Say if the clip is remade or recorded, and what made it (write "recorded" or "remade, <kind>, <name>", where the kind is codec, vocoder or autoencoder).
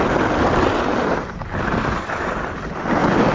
recorded